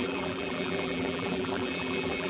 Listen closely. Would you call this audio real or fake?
fake